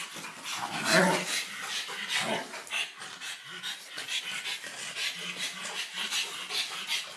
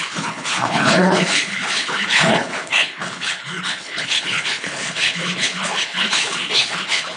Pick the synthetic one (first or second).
second